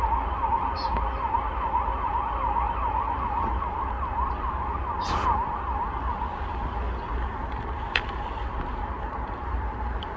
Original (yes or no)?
yes